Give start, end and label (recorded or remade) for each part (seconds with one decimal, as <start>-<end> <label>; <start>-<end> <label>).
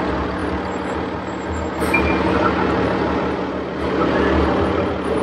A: 0.0-5.2 recorded